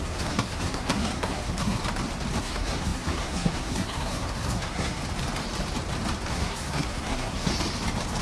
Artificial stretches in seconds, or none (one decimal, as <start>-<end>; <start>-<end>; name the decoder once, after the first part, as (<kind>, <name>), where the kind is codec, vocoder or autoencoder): 0.0-1.8 (codec, SNAC); 2.4-5.0; 6.3-7.5